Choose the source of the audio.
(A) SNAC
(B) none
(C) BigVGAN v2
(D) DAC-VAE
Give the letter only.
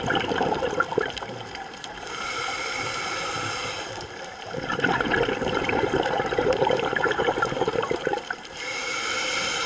C